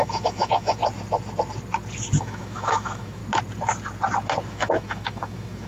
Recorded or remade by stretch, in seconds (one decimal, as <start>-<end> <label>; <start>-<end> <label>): 0.0-0.8 remade; 0.8-2.2 recorded; 2.2-3.2 remade; 3.2-4.5 recorded; 4.5-5.7 remade